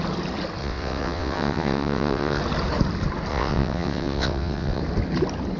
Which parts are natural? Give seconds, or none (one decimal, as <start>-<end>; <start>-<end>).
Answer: 0.0-0.6; 2.4-3.3; 4.8-5.6

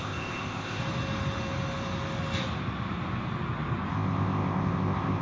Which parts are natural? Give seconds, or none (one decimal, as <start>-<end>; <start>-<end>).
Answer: 0.8-3.9

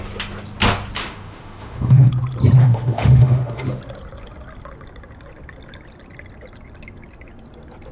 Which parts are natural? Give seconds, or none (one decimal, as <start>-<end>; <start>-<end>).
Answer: 0.0-1.0; 2.1-2.6; 3.8-7.9

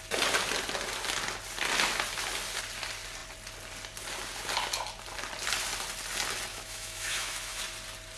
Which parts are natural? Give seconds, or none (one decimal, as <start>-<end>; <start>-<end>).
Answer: 0.0-6.5; 7.6-8.2

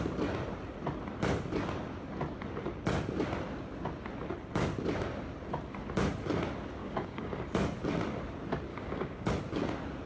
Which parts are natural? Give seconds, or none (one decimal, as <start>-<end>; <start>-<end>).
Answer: 0.0-6.8; 7.4-8.7; 9.3-10.1